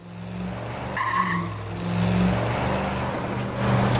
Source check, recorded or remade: recorded